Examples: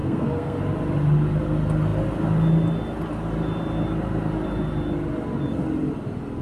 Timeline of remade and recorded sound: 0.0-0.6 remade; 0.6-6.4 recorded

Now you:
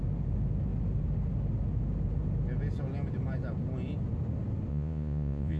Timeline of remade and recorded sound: 0.0-4.7 recorded; 4.7-5.6 remade

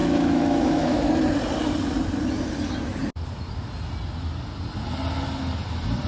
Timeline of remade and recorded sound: 0.0-1.1 remade; 1.1-6.1 recorded

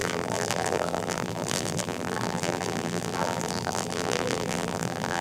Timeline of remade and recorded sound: 0.0-5.2 remade

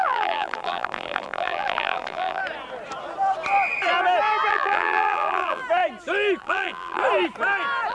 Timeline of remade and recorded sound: 0.0-2.4 remade; 2.4-4.5 recorded; 4.5-5.6 remade; 5.6-6.4 recorded; 6.4-7.0 remade; 7.0-7.9 recorded

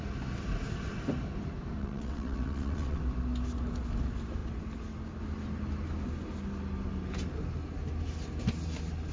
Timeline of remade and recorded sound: 0.0-1.8 recorded; 1.8-3.0 remade; 3.0-9.1 recorded

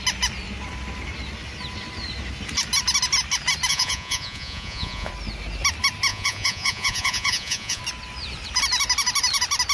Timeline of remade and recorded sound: 0.0-3.7 recorded; 3.7-5.1 remade; 5.1-6.1 recorded; 6.1-7.8 remade; 7.8-9.7 recorded

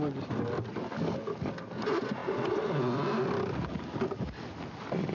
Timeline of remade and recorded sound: 0.0-5.1 recorded